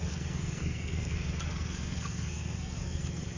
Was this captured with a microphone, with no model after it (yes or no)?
no